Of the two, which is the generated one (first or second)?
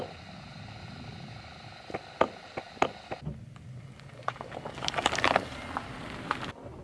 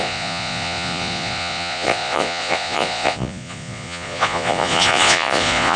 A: second